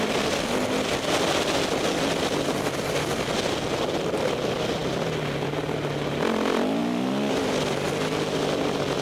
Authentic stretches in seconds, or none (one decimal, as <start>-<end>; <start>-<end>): 0.0-9.0